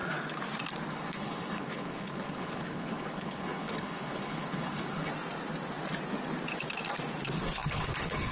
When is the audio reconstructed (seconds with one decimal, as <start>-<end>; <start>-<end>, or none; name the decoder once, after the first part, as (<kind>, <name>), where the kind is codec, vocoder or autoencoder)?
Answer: 0.9-5.1 (codec, HILCodec); 7.6-8.3

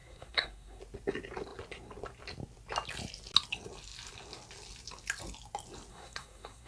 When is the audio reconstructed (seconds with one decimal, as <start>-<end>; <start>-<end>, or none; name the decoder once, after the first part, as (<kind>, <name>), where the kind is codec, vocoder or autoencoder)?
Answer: 0.0-0.8 (codec, SNAC); 5.9-6.7

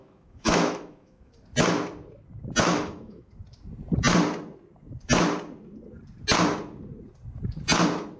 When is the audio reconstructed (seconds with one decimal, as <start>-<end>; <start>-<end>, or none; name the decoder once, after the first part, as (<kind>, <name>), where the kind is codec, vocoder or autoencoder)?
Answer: 0.0-1.3 (autoencoder, DAC-VAE); 2.7-3.3

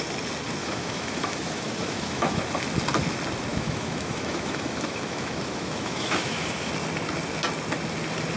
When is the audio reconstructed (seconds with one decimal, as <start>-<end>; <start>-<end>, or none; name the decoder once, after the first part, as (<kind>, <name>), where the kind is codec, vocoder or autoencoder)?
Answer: 0.6-2.4 (autoencoder, DAC-VAE); 3.5-6.7